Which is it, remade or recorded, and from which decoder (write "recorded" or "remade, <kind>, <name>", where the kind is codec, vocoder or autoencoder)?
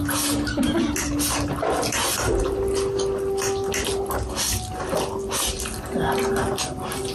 recorded